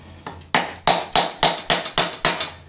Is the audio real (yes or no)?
yes